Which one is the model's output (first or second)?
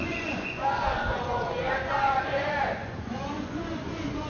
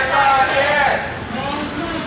first